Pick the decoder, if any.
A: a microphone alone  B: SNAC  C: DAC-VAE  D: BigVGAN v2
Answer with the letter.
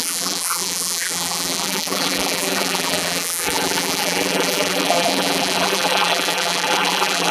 D